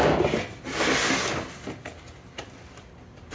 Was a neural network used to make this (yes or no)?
no